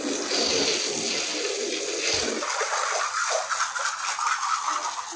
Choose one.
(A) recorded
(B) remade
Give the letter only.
A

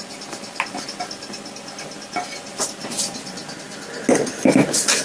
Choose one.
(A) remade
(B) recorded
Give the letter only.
B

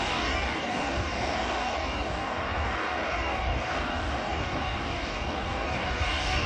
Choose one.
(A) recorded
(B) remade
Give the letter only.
B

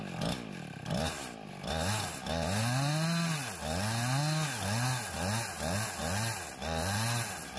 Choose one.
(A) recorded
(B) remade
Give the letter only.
A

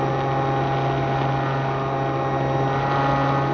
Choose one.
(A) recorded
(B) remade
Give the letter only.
A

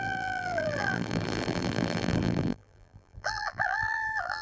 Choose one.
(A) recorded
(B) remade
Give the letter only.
B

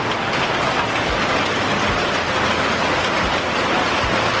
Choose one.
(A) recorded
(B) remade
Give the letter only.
A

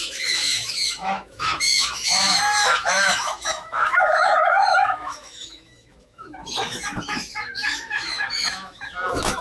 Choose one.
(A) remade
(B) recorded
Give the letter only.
A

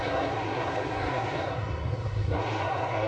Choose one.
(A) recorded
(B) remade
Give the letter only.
B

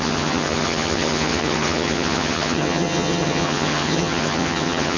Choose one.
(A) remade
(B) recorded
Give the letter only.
A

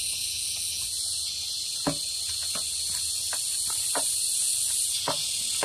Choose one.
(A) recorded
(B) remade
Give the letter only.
A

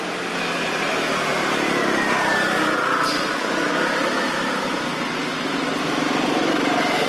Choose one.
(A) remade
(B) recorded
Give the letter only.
B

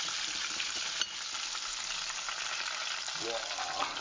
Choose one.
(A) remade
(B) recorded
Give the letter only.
B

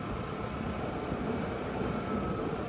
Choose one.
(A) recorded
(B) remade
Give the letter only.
A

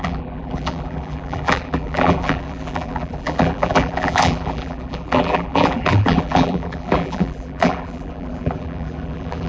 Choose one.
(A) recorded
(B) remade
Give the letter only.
B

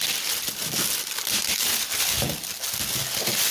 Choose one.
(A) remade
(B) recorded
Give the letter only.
B